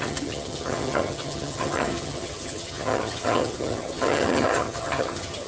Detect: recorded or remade remade